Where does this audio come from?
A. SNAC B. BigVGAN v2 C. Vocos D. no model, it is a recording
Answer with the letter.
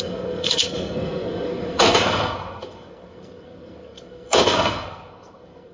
A